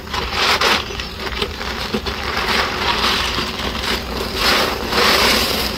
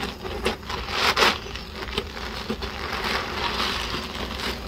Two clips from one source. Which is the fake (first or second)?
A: first